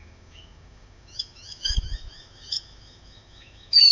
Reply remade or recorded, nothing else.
remade